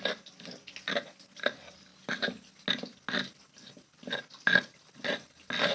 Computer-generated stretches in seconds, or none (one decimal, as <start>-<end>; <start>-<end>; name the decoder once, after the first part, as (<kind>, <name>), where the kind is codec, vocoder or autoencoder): none